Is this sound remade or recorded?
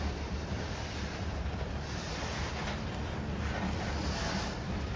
recorded